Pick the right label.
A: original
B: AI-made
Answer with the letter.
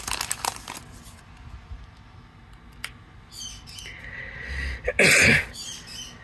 A